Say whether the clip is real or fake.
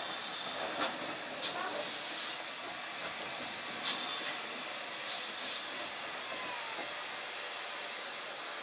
real